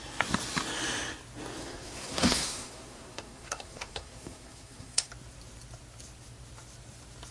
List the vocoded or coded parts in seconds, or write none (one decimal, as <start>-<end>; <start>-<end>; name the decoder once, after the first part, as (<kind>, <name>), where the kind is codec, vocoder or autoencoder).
1.6-5.1 (codec, SNAC)